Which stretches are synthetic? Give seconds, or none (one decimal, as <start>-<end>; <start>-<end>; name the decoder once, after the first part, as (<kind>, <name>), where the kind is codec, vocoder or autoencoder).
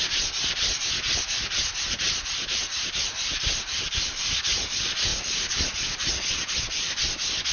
5.1-7.0 (vocoder, BigVGAN v2)